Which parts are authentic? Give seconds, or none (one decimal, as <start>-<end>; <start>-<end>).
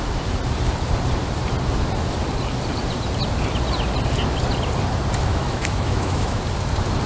0.0-5.3; 6.4-7.1